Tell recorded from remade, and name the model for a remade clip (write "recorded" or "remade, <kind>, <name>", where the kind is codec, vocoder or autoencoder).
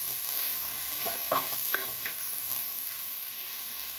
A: remade, codec, DAC